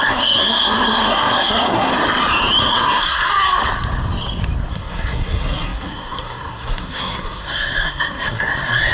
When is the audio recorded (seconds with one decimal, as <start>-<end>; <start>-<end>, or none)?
1.9-2.6; 3.3-4.7